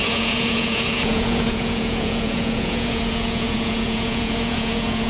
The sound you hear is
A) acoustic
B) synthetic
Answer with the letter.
B